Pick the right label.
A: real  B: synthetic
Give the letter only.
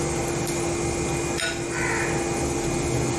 A